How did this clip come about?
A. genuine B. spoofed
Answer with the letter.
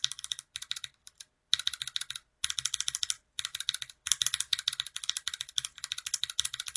A